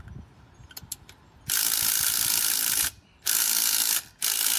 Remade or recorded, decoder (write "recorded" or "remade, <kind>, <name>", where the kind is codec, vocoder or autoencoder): recorded